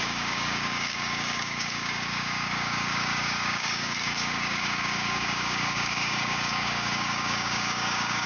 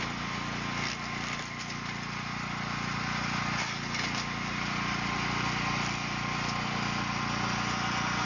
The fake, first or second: first